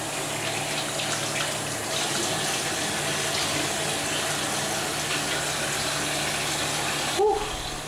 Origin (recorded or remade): recorded